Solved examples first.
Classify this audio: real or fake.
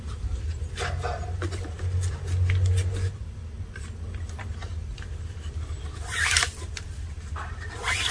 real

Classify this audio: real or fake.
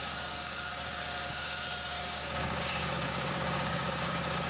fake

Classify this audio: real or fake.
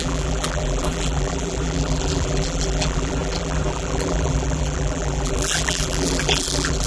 fake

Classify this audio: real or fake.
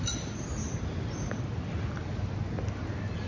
real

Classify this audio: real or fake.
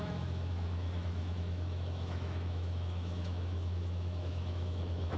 fake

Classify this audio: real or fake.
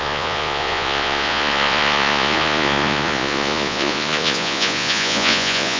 fake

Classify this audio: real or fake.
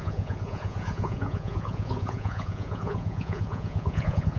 fake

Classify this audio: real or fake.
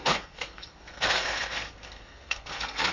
fake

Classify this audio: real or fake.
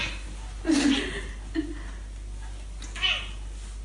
real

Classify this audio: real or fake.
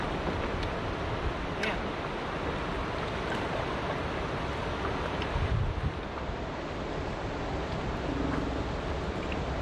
real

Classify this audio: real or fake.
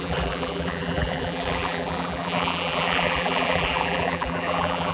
fake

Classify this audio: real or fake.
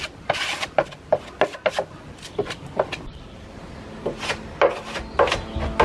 real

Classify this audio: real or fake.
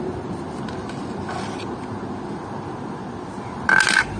real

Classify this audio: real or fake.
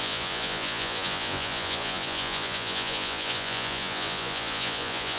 fake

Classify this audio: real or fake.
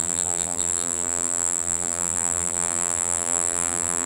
fake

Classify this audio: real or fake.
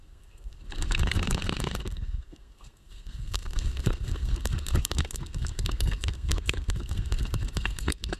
fake